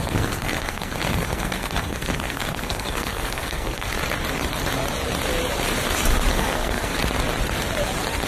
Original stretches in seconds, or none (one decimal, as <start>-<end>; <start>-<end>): 3.9-6.3; 6.9-8.3